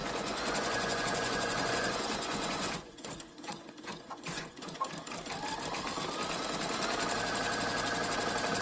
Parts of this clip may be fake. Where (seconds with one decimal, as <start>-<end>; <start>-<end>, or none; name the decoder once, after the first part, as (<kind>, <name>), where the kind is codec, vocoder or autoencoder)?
0.0-4.8 (vocoder, Vocos)